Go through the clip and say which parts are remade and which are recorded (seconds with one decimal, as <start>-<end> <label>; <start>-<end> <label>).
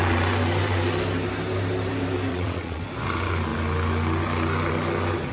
0.0-2.3 recorded; 2.3-2.8 remade; 2.8-5.3 recorded